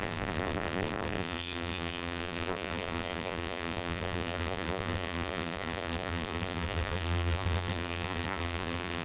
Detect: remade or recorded remade